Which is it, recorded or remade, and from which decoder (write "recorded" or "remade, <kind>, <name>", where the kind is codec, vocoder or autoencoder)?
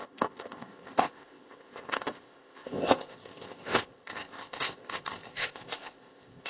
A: remade, codec, ZipCodec